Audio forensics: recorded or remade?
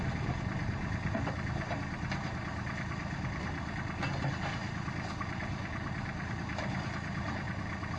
recorded